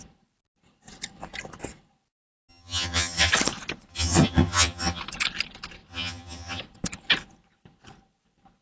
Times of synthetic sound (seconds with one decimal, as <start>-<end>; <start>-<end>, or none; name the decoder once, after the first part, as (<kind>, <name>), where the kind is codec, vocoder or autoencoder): 2.5-3.3 (vocoder, HiFi-GAN); 3.9-5.0; 5.9-6.6